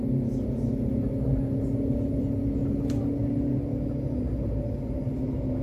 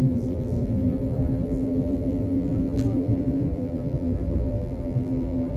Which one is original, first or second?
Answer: first